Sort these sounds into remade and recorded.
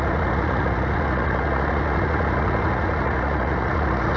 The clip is remade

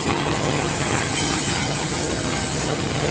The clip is remade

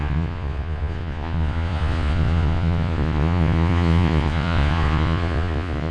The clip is remade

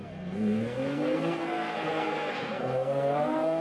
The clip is remade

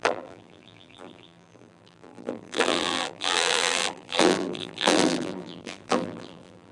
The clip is remade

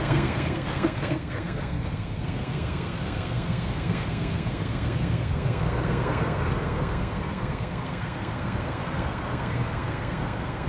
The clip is remade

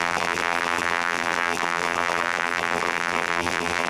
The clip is remade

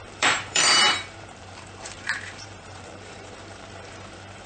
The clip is remade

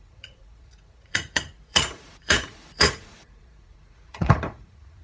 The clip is remade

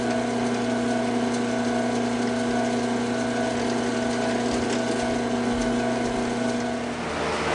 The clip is recorded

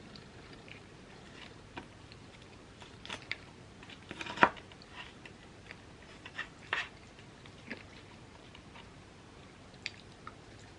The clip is remade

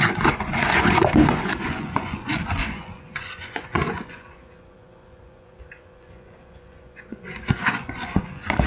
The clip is remade